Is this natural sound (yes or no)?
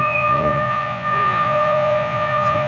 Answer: no